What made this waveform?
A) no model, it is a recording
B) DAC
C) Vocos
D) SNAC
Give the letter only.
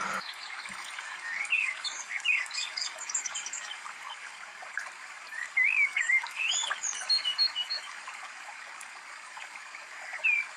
B